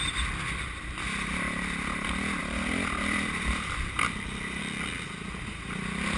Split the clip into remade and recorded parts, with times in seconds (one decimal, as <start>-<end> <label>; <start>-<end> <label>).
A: 0.0-2.4 recorded; 2.4-4.6 remade; 4.6-6.2 recorded